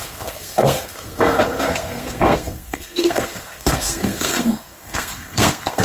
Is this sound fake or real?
fake